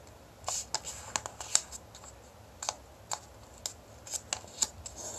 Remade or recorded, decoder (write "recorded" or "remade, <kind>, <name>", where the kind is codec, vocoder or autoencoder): recorded